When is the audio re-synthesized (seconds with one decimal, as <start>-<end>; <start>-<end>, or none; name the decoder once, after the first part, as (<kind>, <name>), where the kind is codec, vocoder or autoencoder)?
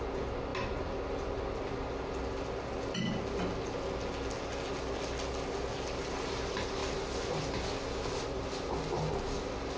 none